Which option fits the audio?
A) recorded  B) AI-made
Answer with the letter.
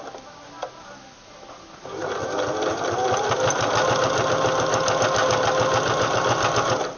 A